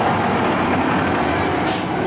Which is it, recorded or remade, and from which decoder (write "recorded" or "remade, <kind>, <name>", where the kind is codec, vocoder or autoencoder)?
recorded